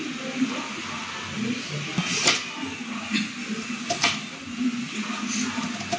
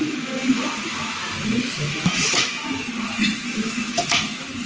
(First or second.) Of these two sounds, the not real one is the second